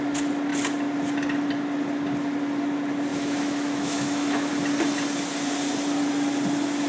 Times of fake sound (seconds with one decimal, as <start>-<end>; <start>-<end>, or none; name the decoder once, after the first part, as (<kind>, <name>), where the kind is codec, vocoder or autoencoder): 3.1-4.5 (autoencoder, DAC-VAE)